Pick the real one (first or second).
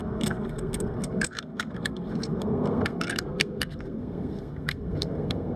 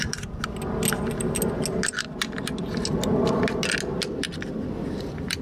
second